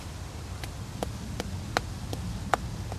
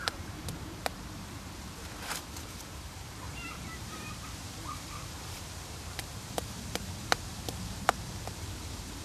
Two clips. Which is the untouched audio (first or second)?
first